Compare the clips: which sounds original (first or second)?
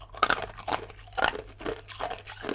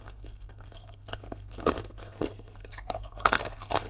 first